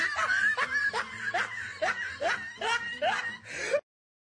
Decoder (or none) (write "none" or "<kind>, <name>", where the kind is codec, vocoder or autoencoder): none